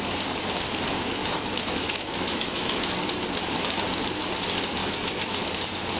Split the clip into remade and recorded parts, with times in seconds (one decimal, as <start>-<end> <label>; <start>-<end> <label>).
0.0-1.2 recorded; 1.2-2.9 remade; 2.9-4.8 recorded; 4.8-5.4 remade; 5.4-6.0 recorded